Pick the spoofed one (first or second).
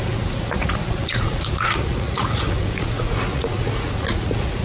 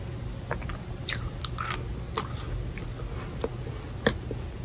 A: first